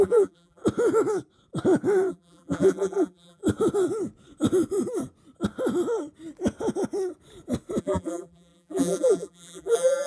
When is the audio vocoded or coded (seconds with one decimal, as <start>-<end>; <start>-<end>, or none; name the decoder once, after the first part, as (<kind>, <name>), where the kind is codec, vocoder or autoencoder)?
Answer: 0.0-0.6 (vocoder, BigVGAN v2); 2.1-3.4; 7.8-10.1